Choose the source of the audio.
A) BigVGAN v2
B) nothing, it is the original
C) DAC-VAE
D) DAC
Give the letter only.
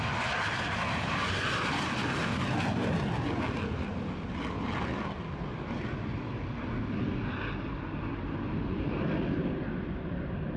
B